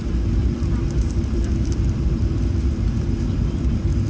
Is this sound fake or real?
fake